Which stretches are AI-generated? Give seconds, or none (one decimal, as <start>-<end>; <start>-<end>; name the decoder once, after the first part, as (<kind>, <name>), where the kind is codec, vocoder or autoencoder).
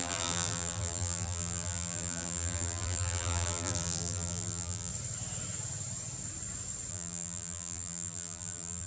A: 0.0-4.9 (vocoder, BigVGAN v2); 6.9-8.9